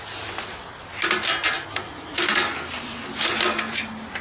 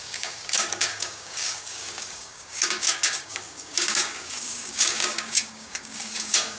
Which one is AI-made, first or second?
second